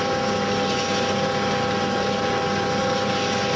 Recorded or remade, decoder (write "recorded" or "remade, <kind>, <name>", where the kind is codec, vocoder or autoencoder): recorded